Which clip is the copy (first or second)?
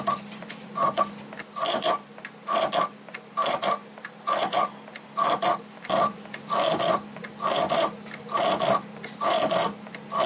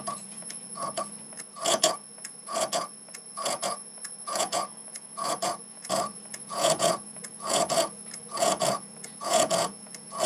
second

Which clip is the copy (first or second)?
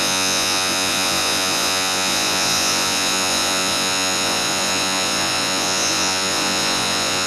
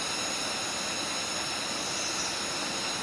first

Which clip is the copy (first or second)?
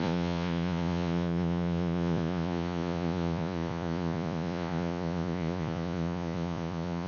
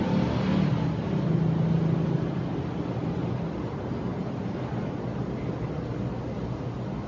first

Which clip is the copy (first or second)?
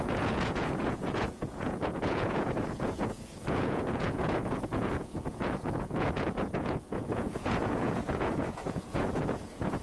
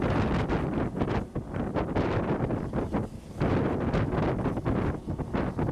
first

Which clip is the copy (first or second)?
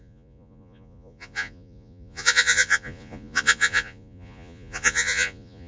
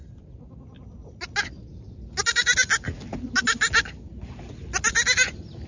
first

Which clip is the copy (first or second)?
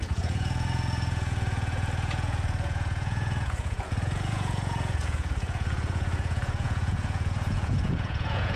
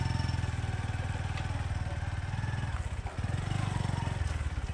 first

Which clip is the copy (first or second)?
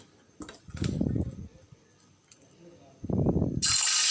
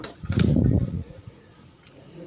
second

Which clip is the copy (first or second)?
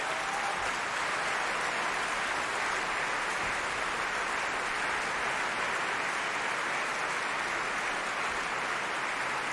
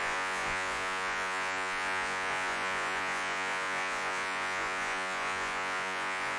second